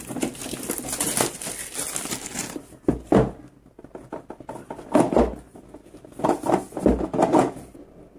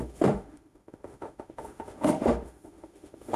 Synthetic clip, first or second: second